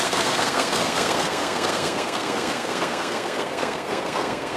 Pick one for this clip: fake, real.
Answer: fake